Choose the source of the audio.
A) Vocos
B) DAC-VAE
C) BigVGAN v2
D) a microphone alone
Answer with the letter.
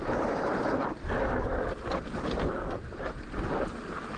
D